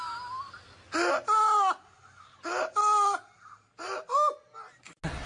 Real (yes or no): yes